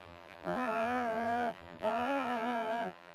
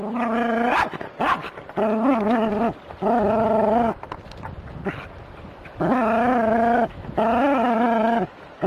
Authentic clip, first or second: second